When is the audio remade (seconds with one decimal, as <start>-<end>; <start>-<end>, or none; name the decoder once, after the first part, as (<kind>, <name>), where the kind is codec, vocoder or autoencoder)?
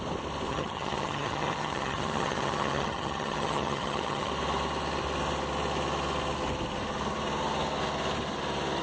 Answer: 0.5-4.3 (vocoder, HiFi-GAN)